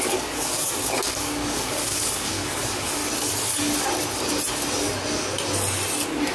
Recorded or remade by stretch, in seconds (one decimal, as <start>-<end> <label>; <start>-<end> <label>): 0.0-3.0 remade; 3.0-6.3 recorded